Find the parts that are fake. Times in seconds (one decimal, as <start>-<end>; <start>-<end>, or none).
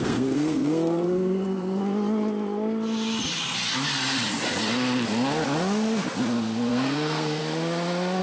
0.0-1.8; 6.7-7.4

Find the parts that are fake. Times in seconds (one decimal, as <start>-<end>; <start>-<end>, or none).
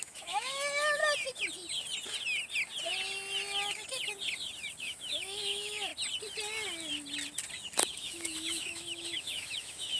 0.0-1.0; 4.8-5.9; 7.9-10.0